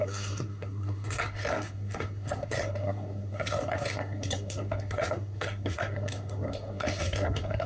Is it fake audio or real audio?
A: fake